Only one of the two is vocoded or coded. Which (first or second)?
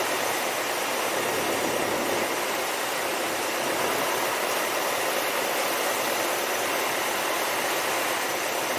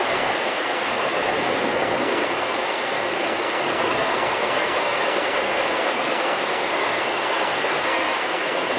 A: second